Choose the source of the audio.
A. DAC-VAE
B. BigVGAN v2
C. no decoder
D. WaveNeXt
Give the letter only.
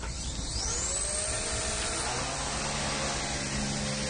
C